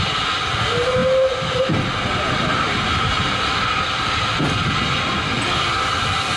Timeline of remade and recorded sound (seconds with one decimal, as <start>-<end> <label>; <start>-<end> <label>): 0.0-6.4 recorded